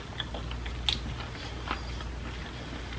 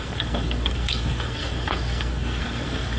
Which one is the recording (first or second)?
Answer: first